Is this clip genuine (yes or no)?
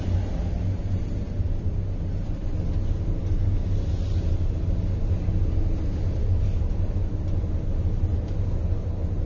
yes